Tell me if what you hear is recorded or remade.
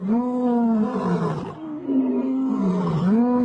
recorded